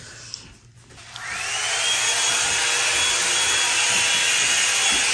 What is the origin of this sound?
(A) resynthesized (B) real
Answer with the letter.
B